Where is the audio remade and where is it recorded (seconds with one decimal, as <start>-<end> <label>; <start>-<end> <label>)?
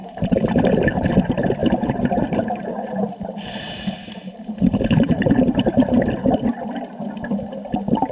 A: 0.0-1.1 remade; 1.1-1.6 recorded; 1.6-6.1 remade; 6.1-8.1 recorded